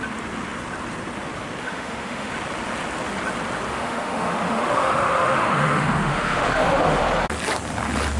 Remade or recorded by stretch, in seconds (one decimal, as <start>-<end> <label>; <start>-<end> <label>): 0.0-1.6 recorded; 1.6-2.3 remade; 2.3-3.7 recorded; 3.7-7.0 remade; 7.0-8.2 recorded

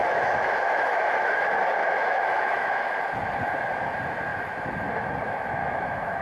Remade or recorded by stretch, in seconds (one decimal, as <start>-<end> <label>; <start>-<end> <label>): 0.0-1.3 remade; 1.3-1.8 recorded; 1.8-3.0 remade; 3.0-5.6 recorded; 5.6-6.2 remade

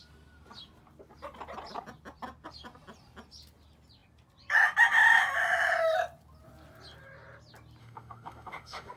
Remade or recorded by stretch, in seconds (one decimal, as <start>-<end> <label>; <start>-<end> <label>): 0.0-7.8 recorded; 7.8-9.0 remade

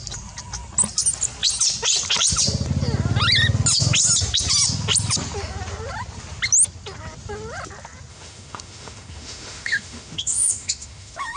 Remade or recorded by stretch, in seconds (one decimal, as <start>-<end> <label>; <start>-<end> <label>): 0.0-8.1 recorded; 8.1-11.4 remade

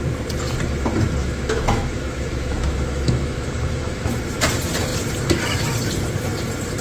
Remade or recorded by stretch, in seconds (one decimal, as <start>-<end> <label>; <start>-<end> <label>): 0.0-1.2 recorded; 1.2-4.2 remade; 4.2-6.8 recorded